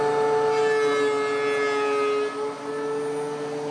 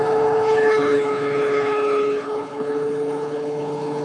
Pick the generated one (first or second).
second